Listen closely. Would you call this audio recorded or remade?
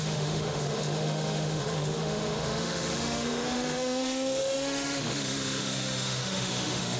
remade